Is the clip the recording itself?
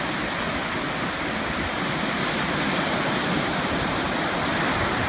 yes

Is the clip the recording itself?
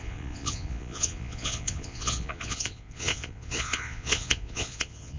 no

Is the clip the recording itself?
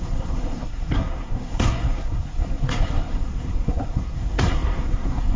no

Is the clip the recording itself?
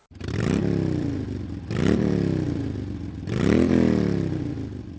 no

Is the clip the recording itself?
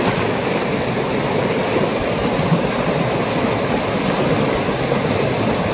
yes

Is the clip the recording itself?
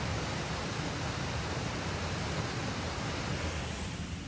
yes